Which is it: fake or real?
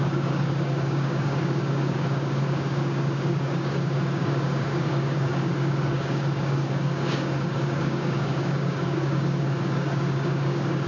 fake